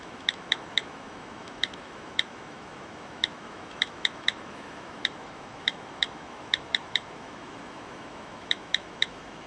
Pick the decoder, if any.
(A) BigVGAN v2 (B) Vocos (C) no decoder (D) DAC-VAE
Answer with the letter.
D